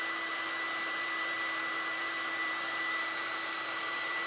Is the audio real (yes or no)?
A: no